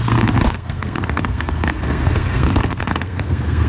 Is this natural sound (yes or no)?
no